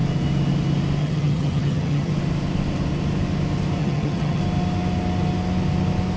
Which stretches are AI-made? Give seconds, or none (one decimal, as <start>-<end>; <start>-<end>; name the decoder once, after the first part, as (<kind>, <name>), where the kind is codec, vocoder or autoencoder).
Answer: 1.0-2.1 (vocoder, HiFi-GAN); 3.8-4.4